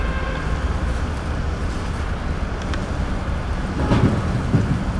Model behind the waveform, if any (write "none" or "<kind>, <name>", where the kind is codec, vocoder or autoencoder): none